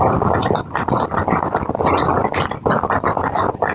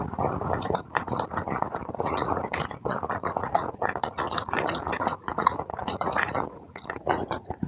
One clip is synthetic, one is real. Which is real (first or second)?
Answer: first